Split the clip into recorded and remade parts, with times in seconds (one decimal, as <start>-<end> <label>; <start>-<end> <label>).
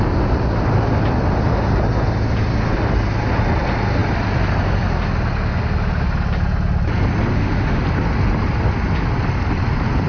0.0-7.3 recorded; 7.3-7.8 remade; 7.8-10.1 recorded